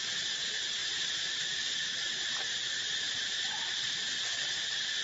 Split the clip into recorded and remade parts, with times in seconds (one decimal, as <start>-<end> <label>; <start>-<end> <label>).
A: 0.0-0.8 recorded; 0.8-3.5 remade; 3.5-5.0 recorded